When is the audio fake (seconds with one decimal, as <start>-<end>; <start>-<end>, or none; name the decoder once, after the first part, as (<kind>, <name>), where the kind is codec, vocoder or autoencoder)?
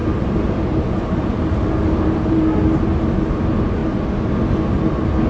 0.0-3.0 (vocoder, BigVGAN v2)